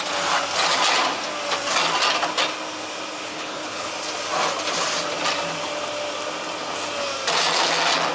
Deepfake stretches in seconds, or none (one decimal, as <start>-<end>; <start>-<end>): 3.3-3.9